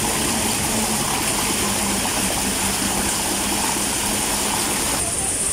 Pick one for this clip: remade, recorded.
recorded